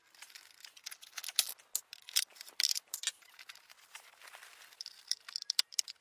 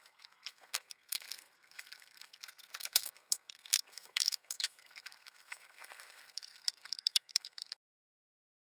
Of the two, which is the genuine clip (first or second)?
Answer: first